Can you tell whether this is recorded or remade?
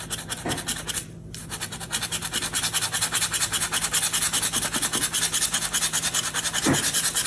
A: recorded